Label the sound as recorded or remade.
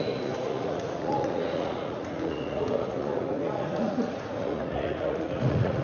remade